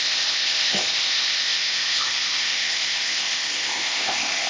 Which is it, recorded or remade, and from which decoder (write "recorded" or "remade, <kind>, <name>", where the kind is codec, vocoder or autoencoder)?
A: remade, codec, ZipCodec